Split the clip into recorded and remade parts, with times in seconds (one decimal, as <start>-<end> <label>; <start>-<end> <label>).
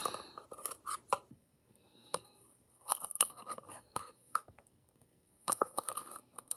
0.0-1.3 recorded; 1.3-6.6 remade